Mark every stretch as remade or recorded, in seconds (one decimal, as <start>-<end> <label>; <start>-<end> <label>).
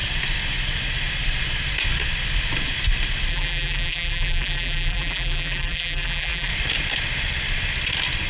0.0-3.3 recorded; 3.3-6.5 remade; 6.5-8.3 recorded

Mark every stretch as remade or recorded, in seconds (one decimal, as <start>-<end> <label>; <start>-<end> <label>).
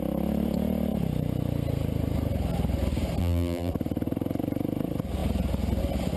0.0-3.2 recorded; 3.2-3.7 remade; 3.7-6.2 recorded